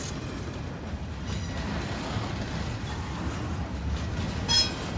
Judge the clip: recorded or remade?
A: recorded